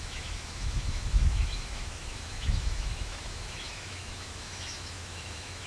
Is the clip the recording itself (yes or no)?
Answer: no